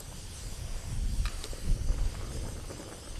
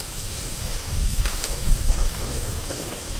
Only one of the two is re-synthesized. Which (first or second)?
second